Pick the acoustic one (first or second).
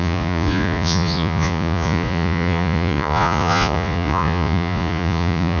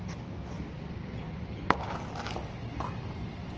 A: second